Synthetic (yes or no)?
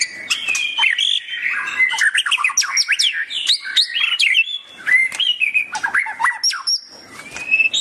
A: no